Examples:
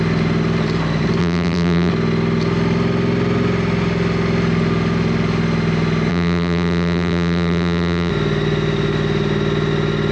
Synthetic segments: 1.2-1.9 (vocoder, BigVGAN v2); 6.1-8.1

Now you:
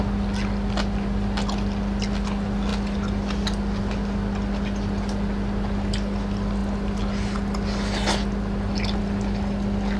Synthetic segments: none